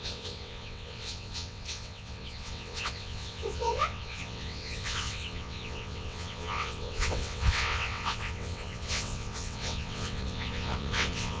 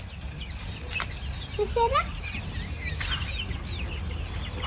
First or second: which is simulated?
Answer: first